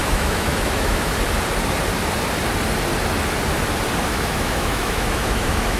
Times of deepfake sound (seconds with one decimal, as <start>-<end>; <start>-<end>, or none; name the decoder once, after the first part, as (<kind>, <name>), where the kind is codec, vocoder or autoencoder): 0.0-1.1 (autoencoder, DAC-VAE); 4.1-5.8